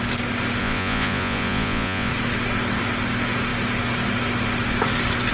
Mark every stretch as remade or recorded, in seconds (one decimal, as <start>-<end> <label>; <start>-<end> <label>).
0.0-0.6 recorded; 0.6-2.1 remade; 2.1-5.3 recorded